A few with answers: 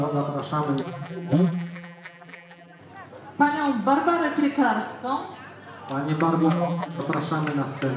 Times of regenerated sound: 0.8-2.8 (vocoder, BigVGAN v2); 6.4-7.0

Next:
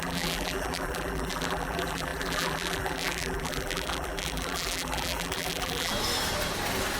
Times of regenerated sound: 0.0-5.9 (vocoder, BigVGAN v2)

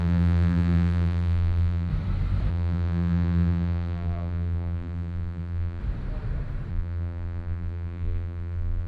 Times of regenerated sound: 0.0-1.9 (vocoder, BigVGAN v2); 2.5-5.8; 6.7-8.9

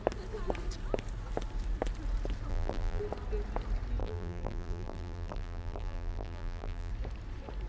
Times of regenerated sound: 2.5-3.0 (vocoder, BigVGAN v2); 4.0-6.9

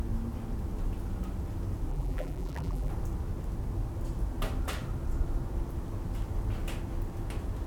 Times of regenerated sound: 1.9-2.9 (vocoder, BigVGAN v2)

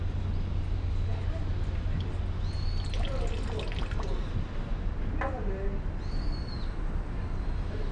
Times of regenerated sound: none

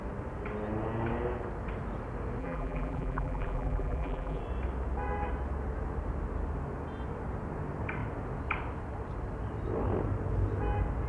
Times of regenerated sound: 2.4-4.4 (vocoder, BigVGAN v2)